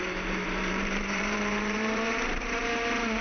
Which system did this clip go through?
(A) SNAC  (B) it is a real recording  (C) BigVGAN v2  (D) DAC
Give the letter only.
C